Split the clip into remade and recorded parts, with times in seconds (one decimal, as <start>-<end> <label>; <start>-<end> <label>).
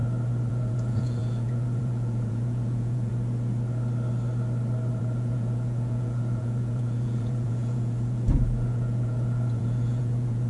0.0-0.5 recorded; 0.5-3.1 remade; 3.1-5.0 recorded; 5.0-10.5 remade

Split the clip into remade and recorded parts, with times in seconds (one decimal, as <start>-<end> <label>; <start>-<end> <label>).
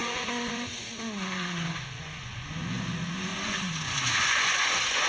0.0-5.1 remade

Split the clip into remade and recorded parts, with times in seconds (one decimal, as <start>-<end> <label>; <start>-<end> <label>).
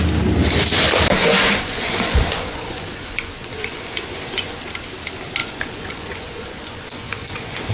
0.0-1.2 recorded; 1.2-4.6 remade; 4.6-5.4 recorded; 5.4-7.7 remade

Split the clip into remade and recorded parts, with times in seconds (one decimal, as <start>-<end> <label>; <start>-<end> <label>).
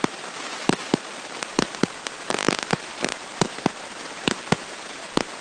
0.0-5.4 recorded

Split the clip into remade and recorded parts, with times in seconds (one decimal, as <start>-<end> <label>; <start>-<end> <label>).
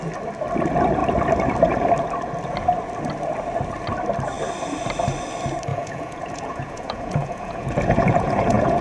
0.0-5.7 recorded; 5.7-8.8 remade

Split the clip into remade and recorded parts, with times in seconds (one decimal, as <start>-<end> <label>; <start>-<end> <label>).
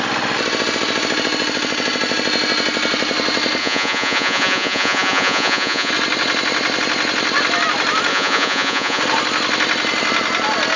0.0-3.6 recorded; 3.6-5.9 remade; 5.9-8.1 recorded; 8.1-9.0 remade; 9.0-10.8 recorded